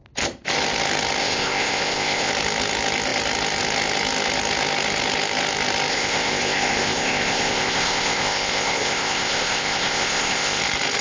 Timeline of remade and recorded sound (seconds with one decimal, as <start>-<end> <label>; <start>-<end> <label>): 0.0-1.2 recorded; 1.2-2.3 remade; 2.3-5.9 recorded; 5.9-10.6 remade; 10.6-11.0 recorded